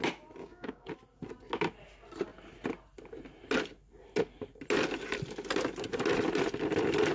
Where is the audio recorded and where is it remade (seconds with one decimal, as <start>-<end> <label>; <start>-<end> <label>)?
0.0-0.4 recorded; 0.4-0.9 remade; 0.9-7.1 recorded